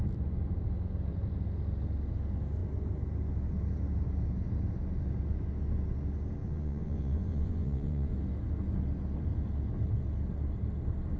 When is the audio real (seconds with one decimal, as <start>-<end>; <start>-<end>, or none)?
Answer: 0.0-6.4; 8.1-11.2